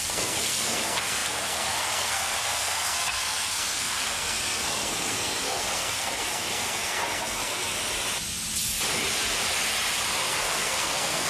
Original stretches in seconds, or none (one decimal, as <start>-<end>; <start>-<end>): 7.7-10.3